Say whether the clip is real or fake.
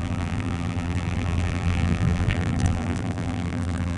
fake